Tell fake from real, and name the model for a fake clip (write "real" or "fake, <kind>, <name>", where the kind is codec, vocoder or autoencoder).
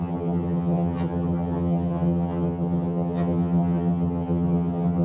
fake, vocoder, HiFi-GAN